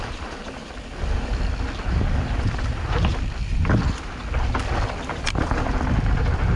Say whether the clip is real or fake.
real